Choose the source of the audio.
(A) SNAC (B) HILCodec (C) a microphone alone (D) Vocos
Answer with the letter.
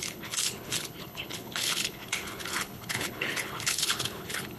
B